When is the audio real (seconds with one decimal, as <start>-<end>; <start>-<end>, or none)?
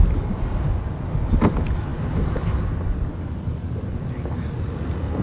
0.0-5.2